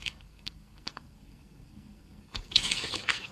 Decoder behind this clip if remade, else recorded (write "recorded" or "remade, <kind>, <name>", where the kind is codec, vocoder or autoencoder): remade, codec, SNAC